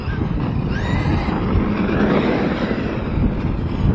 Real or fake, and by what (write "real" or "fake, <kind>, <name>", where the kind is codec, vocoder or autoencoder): real